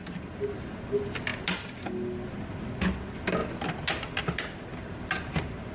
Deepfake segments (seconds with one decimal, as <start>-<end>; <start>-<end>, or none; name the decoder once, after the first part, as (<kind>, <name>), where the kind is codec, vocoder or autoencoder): none